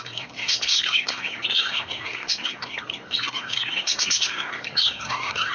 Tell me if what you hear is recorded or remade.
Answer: remade